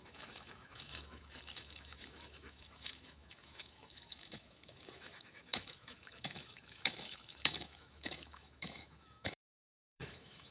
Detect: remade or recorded remade